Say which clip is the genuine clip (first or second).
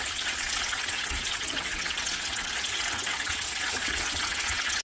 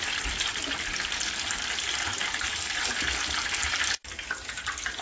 second